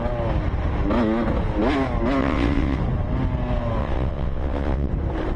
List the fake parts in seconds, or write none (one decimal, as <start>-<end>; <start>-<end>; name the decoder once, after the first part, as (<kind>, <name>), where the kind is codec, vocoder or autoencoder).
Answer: 2.2-2.8 (vocoder, WaveNeXt); 3.8-4.9